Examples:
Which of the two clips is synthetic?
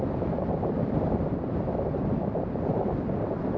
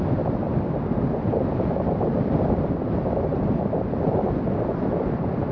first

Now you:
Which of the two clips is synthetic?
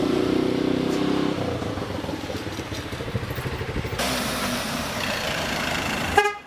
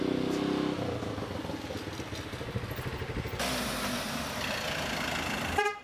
first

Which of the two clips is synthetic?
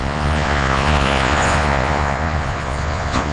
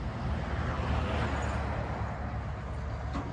first